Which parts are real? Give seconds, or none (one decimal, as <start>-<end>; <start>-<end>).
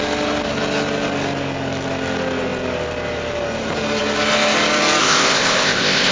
0.0-5.0